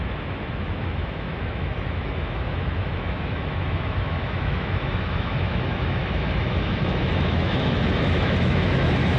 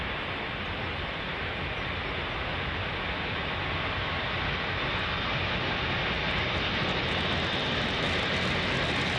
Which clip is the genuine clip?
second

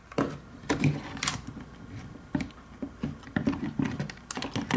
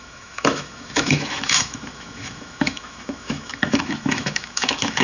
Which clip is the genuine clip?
first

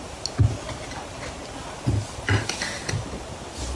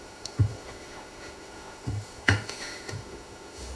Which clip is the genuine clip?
first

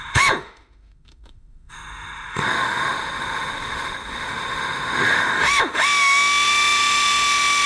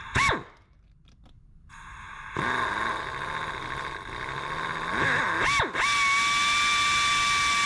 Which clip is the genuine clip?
second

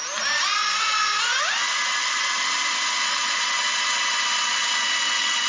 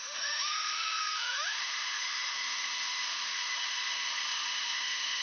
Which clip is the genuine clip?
first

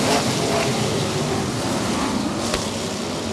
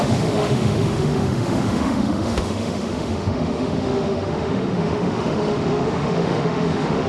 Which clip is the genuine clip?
first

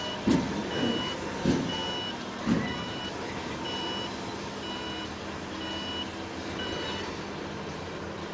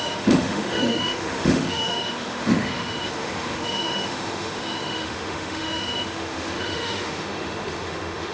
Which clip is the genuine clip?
first